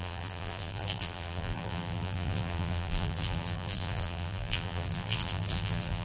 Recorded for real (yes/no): no